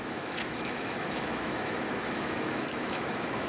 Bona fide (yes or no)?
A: no